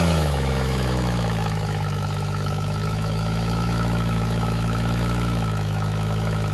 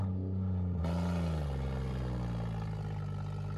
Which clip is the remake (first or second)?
first